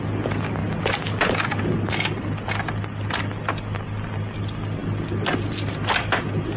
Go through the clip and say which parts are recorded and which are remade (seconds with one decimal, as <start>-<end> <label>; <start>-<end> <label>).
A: 0.0-6.6 recorded